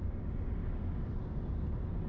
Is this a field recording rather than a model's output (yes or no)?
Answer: yes